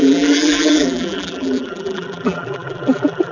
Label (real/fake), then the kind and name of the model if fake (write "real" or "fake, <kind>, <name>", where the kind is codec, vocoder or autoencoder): fake, vocoder, BigVGAN v2